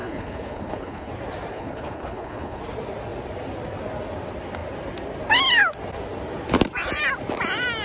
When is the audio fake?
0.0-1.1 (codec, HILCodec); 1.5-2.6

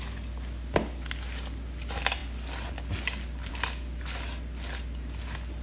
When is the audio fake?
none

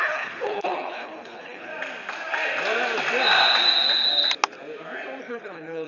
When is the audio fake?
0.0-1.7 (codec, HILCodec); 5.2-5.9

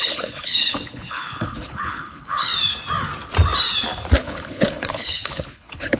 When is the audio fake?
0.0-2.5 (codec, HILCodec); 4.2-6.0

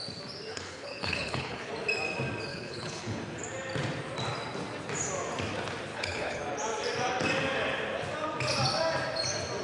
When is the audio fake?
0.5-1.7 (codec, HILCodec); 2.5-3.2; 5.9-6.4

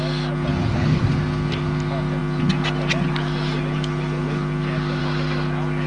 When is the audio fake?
0.6-1.1 (codec, HILCodec)